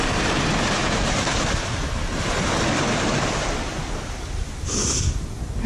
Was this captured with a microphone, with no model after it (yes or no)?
yes